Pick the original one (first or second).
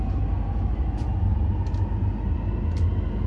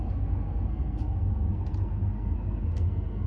first